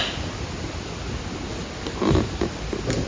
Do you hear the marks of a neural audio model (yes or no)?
no